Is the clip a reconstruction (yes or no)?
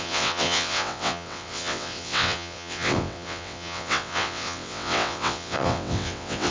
yes